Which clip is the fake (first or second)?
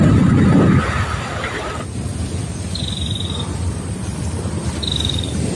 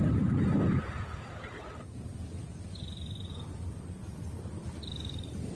first